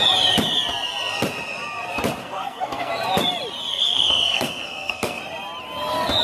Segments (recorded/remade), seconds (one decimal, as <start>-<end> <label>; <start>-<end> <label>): 0.0-2.2 recorded; 2.2-2.9 remade; 2.9-3.7 recorded; 3.7-5.2 remade; 5.2-6.2 recorded